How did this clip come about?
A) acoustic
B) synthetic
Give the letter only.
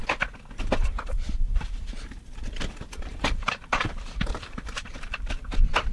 B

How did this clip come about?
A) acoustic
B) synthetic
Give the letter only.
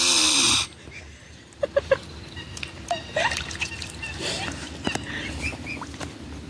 B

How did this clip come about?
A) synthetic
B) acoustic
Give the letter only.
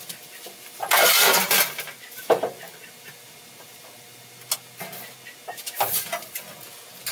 B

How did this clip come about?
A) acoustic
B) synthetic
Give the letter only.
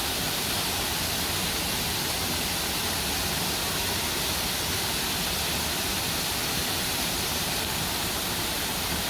A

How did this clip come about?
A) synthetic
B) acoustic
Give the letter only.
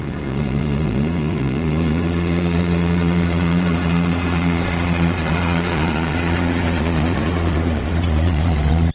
A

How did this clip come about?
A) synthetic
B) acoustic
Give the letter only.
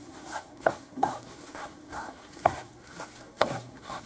A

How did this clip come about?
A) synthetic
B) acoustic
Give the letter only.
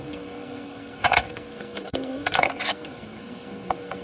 A